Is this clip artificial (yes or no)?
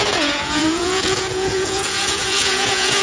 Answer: yes